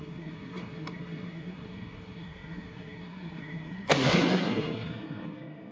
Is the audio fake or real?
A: fake